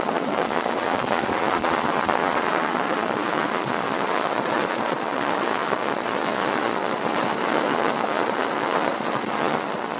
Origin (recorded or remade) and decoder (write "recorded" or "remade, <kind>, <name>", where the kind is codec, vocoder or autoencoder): remade, vocoder, Vocos